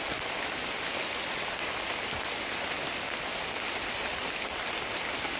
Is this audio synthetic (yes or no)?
no